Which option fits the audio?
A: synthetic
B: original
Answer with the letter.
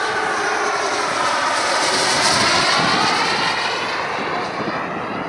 B